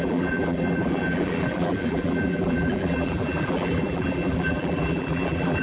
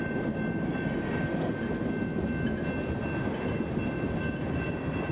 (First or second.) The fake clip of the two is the first